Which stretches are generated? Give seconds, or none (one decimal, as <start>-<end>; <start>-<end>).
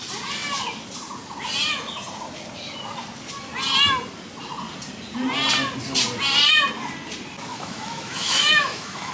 7.5-9.1